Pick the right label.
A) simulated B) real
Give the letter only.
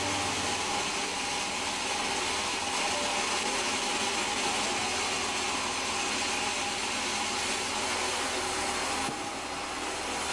B